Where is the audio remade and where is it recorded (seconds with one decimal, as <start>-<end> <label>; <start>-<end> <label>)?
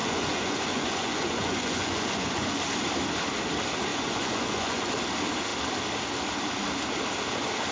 0.0-2.6 remade; 2.6-3.9 recorded; 3.9-4.9 remade; 4.9-7.7 recorded